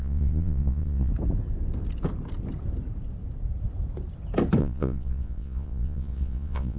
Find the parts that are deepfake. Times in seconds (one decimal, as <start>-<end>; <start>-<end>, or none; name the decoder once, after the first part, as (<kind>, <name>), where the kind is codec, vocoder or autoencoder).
0.0-1.1 (vocoder, Vocos); 4.6-6.8